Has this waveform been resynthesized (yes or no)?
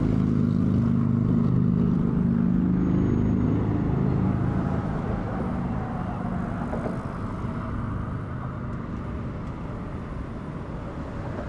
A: no